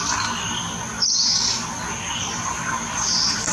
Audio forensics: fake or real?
real